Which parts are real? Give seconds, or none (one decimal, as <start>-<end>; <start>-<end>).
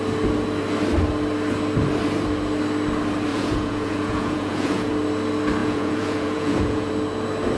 0.0-3.3; 4.9-5.6; 6.9-7.6